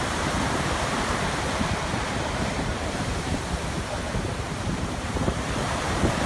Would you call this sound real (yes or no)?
no